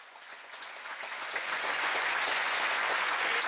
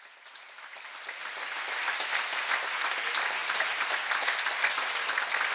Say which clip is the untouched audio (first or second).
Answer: second